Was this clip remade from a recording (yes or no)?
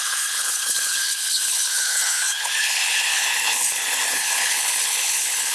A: yes